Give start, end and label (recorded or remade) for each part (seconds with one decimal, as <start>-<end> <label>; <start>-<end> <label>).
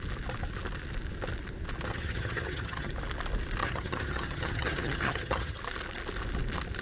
0.0-1.9 recorded; 1.9-2.9 remade; 2.9-3.6 recorded; 3.6-5.6 remade; 5.6-6.8 recorded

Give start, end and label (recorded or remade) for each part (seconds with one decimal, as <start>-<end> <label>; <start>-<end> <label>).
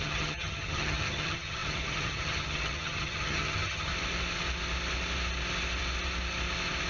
0.0-3.9 remade; 3.9-6.9 recorded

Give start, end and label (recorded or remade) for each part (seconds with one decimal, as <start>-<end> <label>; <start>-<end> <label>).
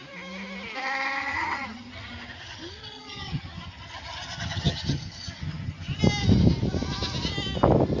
0.0-1.2 recorded; 1.2-6.0 remade; 6.0-8.0 recorded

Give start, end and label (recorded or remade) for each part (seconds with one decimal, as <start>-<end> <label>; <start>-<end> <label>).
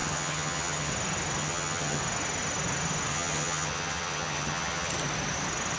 0.0-0.9 remade; 0.9-1.4 recorded; 1.4-2.0 remade; 2.0-3.1 recorded; 3.1-4.9 remade; 4.9-5.8 recorded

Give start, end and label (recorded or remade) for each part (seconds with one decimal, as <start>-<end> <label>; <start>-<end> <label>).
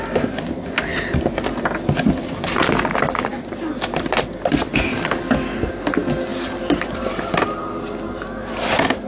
0.0-9.1 recorded